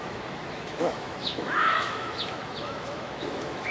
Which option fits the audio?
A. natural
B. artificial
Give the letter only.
B